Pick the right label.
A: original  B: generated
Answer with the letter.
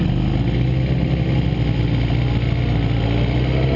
A